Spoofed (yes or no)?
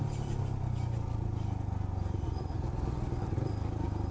no